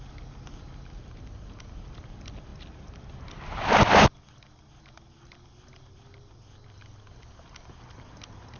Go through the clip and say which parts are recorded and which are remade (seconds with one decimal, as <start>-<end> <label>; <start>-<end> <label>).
0.0-8.6 recorded